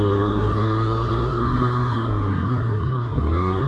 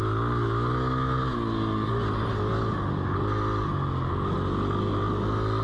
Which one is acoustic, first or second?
second